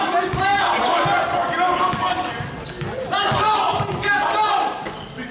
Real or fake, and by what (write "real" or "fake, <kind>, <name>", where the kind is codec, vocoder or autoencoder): real